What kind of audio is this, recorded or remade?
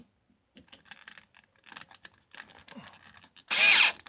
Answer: recorded